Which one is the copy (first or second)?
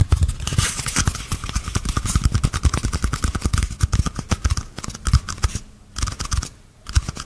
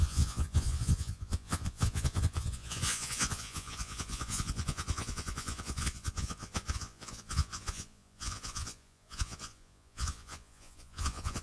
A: second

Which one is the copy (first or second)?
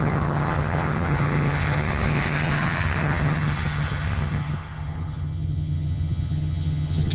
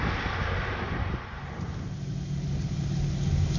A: first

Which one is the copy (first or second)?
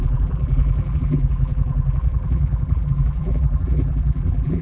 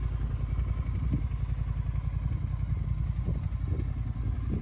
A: first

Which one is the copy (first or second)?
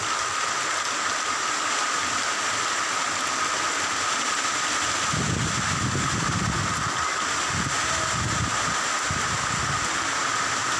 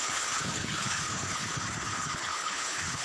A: second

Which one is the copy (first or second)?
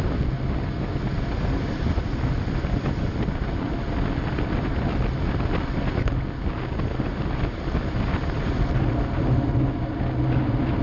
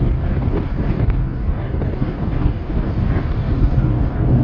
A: second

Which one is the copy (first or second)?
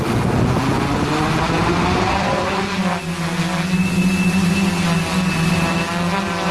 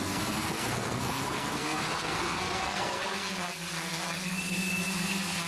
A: second